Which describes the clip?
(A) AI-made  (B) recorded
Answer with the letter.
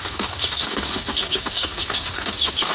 A